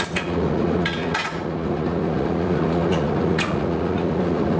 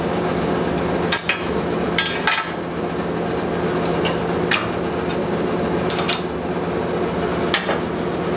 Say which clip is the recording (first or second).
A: second